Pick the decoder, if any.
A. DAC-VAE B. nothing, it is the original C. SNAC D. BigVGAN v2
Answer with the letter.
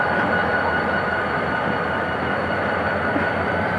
D